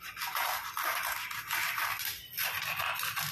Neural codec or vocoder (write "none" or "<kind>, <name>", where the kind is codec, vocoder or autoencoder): none